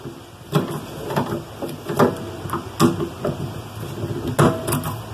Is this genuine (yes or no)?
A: yes